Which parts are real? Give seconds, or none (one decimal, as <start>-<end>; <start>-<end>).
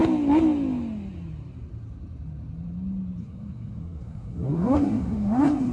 0.0-3.2